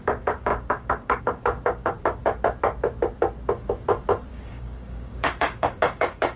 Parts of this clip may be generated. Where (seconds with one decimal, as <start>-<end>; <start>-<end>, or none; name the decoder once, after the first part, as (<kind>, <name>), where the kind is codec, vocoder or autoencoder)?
0.0-2.2 (codec, DAC); 4.3-6.4